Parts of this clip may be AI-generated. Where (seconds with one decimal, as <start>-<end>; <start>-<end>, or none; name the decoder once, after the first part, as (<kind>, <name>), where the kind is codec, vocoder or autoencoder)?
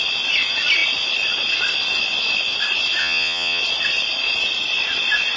3.0-3.6 (vocoder, Vocos)